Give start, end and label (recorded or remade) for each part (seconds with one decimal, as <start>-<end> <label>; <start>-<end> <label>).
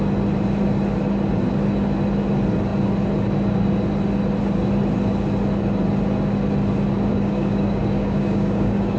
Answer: 0.0-7.1 recorded; 7.1-9.0 remade